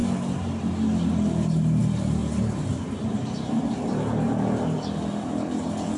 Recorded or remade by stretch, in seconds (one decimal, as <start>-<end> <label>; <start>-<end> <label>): 0.0-6.0 recorded